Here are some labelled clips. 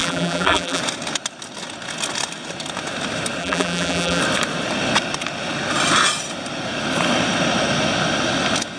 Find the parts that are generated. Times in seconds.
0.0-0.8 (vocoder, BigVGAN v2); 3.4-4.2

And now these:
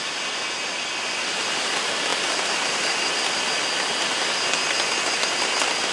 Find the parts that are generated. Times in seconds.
none